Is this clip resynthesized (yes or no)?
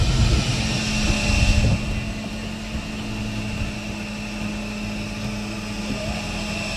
no